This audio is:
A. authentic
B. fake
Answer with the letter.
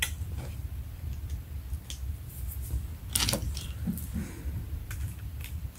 A